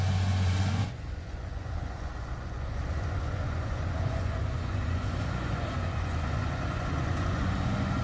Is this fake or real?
fake